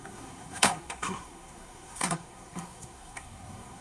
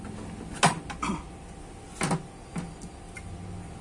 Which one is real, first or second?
second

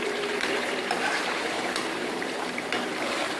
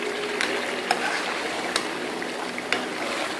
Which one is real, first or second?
second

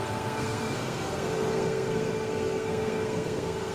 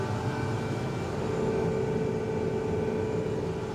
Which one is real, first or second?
second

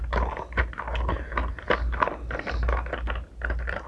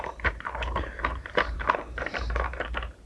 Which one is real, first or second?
first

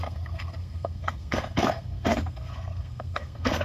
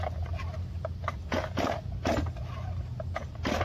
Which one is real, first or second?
second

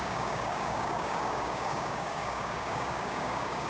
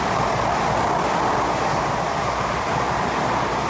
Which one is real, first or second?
second